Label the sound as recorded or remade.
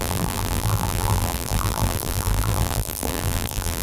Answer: remade